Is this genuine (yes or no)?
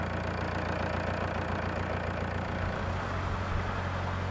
yes